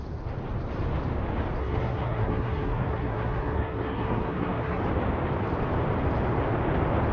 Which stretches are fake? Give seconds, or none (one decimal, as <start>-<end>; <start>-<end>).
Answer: 1.6-4.8